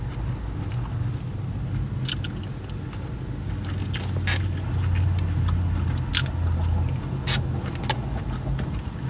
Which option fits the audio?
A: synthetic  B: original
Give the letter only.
B